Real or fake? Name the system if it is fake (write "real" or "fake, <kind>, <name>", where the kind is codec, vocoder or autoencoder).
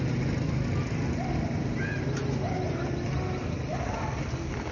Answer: real